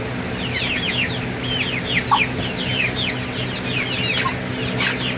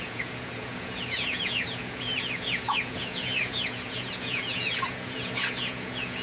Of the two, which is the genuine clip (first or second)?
first